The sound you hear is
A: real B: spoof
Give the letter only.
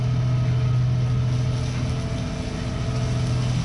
A